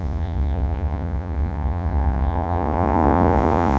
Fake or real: fake